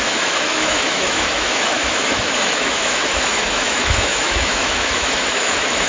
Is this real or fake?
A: fake